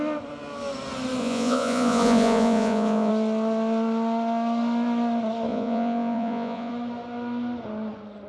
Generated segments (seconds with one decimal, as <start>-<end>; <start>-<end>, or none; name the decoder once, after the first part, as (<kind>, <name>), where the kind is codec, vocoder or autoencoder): 1.2-3.1 (vocoder, Vocos); 5.5-6.7

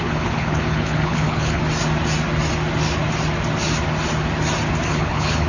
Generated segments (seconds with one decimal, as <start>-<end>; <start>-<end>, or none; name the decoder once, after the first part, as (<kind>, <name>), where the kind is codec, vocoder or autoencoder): 0.0-1.6 (codec, HILCodec); 4.9-5.5

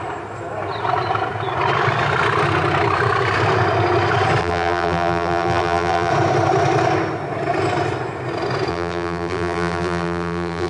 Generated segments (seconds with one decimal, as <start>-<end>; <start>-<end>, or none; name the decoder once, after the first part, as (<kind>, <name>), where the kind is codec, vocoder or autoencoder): 4.4-6.1 (vocoder, BigVGAN v2); 8.7-10.7